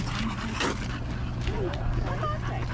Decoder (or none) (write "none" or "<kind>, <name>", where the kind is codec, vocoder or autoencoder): none